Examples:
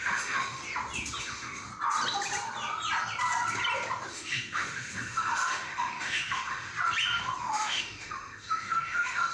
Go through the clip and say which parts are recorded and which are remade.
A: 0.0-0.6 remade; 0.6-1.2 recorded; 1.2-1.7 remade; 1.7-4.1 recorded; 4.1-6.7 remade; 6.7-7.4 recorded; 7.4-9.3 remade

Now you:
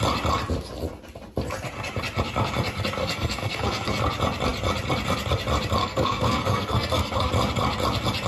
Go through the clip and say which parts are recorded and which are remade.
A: 0.0-3.0 recorded; 3.0-4.0 remade; 4.0-5.8 recorded; 5.8-7.3 remade; 7.3-8.3 recorded

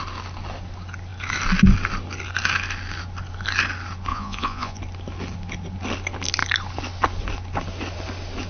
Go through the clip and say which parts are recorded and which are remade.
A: 0.0-4.1 recorded; 4.1-4.8 remade; 4.8-8.5 recorded

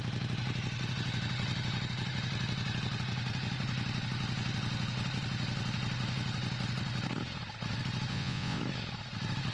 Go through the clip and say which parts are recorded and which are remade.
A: 0.0-8.1 recorded; 8.1-8.6 remade; 8.6-9.5 recorded

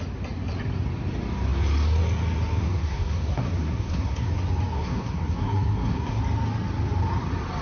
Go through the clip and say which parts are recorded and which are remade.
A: 0.0-2.6 recorded; 2.6-4.3 remade; 4.3-4.7 recorded; 4.7-6.2 remade; 6.2-7.6 recorded

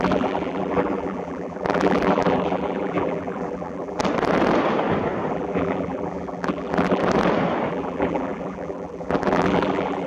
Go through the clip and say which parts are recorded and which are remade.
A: 0.0-4.0 remade; 4.0-5.3 recorded; 5.3-7.0 remade; 7.0-7.7 recorded; 7.7-10.1 remade

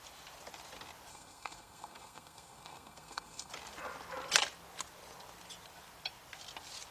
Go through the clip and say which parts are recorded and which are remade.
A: 0.0-1.1 recorded; 1.1-3.5 remade; 3.5-6.9 recorded

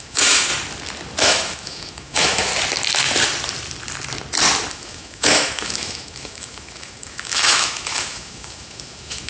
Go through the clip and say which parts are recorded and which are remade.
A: 0.0-0.5 remade; 0.5-1.2 recorded; 1.2-2.5 remade; 2.5-4.7 recorded; 4.7-9.3 remade